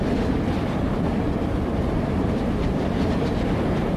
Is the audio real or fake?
fake